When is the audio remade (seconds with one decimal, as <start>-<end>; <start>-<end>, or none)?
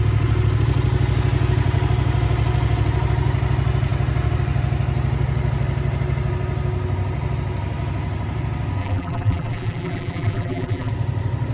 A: 8.8-10.9